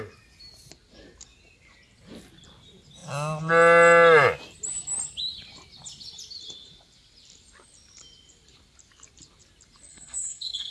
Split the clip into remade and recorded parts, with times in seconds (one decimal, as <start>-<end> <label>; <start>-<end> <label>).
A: 0.0-9.9 recorded; 9.9-10.7 remade